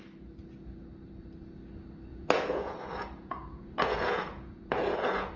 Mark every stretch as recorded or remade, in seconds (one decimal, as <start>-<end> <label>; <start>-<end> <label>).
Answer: 0.0-2.1 recorded; 2.1-5.4 remade